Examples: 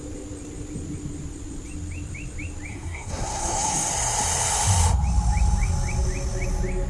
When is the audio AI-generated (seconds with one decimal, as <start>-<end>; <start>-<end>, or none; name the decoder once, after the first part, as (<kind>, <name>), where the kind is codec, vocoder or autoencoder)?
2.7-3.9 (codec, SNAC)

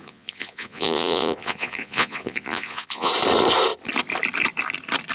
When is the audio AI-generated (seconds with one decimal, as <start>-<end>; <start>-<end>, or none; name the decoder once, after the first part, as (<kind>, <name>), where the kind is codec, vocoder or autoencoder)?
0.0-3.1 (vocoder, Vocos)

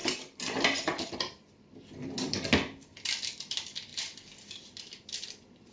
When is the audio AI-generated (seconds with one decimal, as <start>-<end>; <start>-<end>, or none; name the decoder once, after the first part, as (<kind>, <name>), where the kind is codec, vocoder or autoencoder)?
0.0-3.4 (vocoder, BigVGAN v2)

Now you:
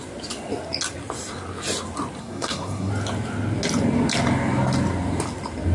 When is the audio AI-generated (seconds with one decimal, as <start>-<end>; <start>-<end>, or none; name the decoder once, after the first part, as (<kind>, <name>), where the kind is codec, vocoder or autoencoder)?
2.2-2.9 (codec, SNAC)

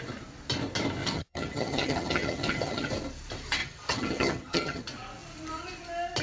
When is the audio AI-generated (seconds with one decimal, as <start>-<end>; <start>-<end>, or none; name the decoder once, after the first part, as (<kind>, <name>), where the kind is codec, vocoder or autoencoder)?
1.0-2.9 (vocoder, HiFi-GAN); 3.6-4.8

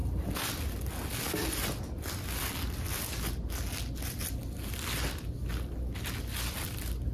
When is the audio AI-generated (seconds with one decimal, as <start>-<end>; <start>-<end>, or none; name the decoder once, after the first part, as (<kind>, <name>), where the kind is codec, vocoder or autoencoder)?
none

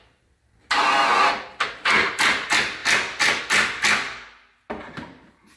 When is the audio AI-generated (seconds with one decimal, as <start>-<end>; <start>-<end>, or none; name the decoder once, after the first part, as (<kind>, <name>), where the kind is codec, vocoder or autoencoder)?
none

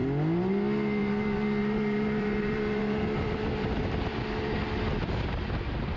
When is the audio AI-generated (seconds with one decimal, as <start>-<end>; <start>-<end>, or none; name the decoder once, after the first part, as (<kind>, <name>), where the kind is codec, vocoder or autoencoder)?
1.0-4.6 (vocoder, BigVGAN v2)